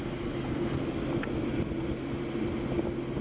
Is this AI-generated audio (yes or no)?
no